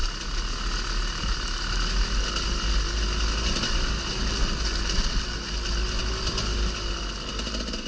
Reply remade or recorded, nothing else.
recorded